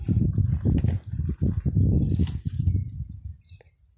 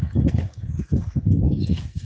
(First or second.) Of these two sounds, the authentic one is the first